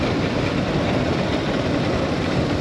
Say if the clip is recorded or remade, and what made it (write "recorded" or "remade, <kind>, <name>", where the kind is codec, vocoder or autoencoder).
recorded